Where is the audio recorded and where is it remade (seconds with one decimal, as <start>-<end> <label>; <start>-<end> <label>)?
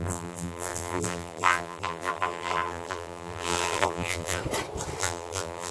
0.0-4.4 remade; 4.4-5.0 recorded; 5.0-5.7 remade